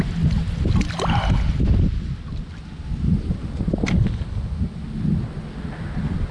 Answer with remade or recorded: recorded